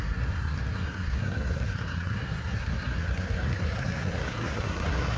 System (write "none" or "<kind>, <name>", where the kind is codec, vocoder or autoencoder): codec, SNAC